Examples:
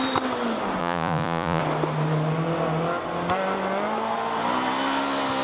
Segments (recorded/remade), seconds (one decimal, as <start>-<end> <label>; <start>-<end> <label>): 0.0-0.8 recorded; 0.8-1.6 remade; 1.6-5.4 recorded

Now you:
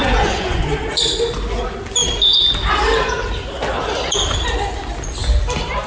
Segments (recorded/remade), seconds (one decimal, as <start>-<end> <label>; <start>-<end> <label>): 0.0-0.8 remade; 0.8-5.9 recorded

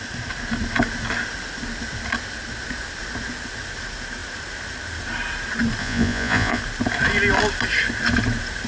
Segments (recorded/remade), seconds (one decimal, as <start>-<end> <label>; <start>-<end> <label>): 0.0-5.8 recorded; 5.8-6.6 remade; 6.6-8.7 recorded

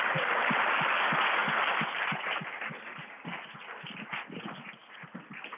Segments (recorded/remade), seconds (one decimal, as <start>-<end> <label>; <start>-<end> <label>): 0.0-1.4 recorded; 1.4-3.1 remade; 3.1-4.8 recorded; 4.8-5.6 remade

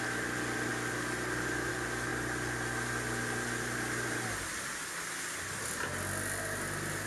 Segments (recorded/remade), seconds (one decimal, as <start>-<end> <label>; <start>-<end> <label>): 0.0-7.1 recorded

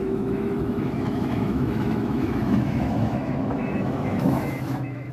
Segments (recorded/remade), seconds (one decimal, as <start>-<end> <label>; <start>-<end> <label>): 0.0-5.1 remade

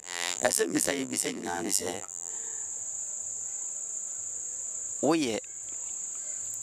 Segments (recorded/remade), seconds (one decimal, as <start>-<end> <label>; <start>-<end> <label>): 0.0-2.3 remade; 2.3-6.6 recorded

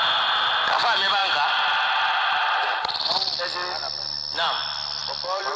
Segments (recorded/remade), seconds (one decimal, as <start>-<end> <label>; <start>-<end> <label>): 0.0-5.0 recorded; 5.0-5.6 remade